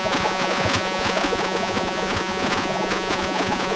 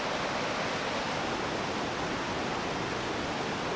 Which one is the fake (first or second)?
first